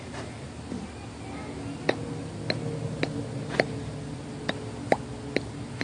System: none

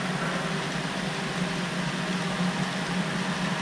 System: none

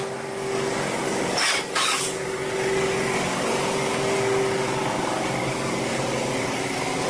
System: codec, DAC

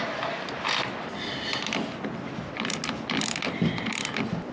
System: none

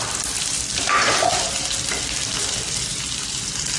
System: none